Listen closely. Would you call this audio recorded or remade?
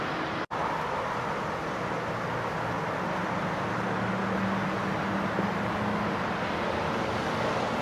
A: recorded